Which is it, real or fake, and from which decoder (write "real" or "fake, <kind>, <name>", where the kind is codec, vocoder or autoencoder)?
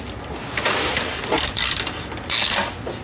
real